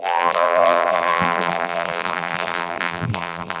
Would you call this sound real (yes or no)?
no